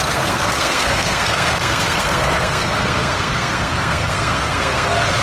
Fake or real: fake